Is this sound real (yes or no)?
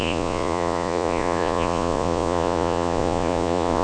no